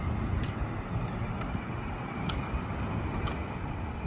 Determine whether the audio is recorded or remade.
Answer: recorded